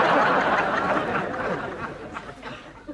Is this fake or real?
real